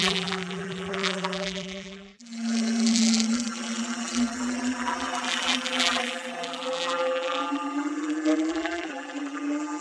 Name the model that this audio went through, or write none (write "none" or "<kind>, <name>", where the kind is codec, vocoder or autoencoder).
vocoder, BigVGAN v2